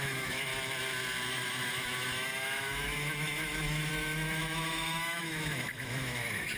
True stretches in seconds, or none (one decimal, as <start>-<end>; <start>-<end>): 0.5-1.3